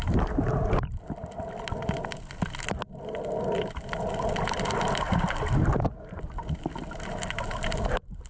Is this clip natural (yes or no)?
yes